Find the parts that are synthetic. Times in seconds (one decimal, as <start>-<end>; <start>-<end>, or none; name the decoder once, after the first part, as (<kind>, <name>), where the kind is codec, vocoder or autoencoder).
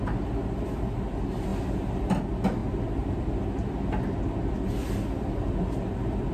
none